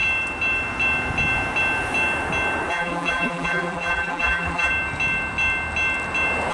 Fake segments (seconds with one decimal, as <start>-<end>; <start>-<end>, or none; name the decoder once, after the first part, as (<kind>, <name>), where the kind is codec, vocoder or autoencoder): 2.7-4.7 (vocoder, BigVGAN v2)